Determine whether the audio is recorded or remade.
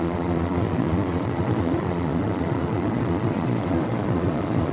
remade